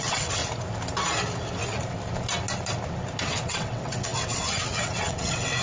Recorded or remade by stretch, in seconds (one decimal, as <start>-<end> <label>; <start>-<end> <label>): 0.0-0.4 remade; 0.4-3.2 recorded; 3.2-5.6 remade